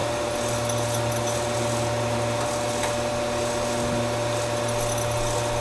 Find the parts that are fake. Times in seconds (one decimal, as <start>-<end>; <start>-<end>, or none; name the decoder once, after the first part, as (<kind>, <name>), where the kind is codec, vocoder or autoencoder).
none